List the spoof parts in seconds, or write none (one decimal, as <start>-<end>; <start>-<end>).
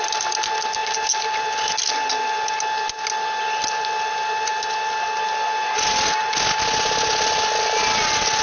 none